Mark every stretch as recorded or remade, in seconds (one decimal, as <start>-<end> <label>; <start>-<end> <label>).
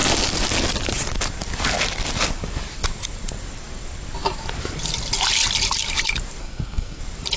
0.0-6.4 recorded; 6.4-7.0 remade; 7.0-7.4 recorded